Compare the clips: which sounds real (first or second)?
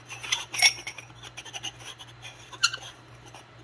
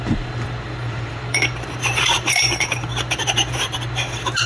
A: first